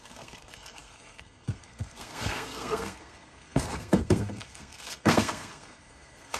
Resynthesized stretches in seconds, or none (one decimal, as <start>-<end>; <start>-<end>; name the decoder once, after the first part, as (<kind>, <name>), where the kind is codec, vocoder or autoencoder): 0.0-6.4 (codec, SNAC)